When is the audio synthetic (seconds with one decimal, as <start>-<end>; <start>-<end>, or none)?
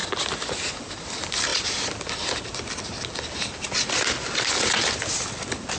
none